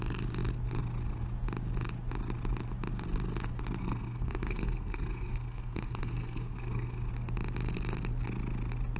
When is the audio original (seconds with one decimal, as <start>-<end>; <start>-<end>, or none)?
0.0-3.8; 7.1-9.0